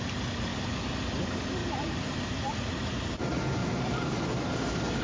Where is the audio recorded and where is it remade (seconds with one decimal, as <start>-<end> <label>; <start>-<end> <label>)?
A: 0.0-0.5 remade; 0.5-1.2 recorded; 1.2-5.0 remade